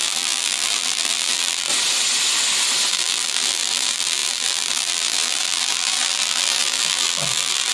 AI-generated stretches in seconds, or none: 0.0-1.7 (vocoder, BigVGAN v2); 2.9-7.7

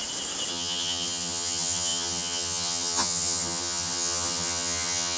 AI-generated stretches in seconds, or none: 0.5-5.2 (vocoder, HiFi-GAN)

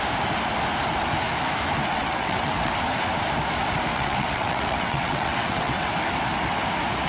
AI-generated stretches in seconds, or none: 1.9-2.7 (vocoder, WaveNeXt); 3.9-5.9

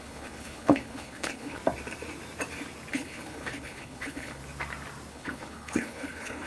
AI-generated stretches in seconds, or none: 0.0-1.6 (codec, HILCodec); 2.9-4.4; 5.1-6.5

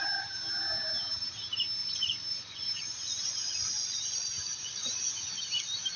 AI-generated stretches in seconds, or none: 1.8-5.4 (vocoder, Vocos)

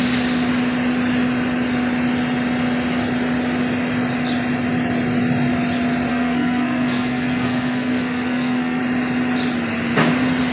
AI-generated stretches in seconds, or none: 6.1-8.8 (codec, SNAC)

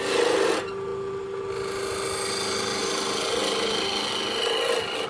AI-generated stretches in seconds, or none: none